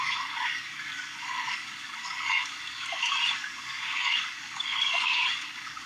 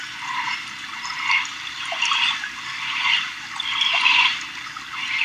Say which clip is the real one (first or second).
second